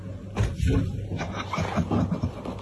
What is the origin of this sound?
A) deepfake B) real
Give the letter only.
B